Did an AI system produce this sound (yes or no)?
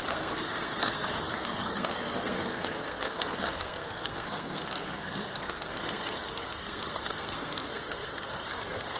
yes